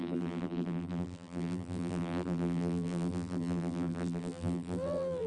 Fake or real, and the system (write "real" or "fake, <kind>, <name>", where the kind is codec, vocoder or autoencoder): fake, vocoder, BigVGAN v2